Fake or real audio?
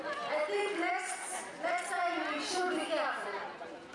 real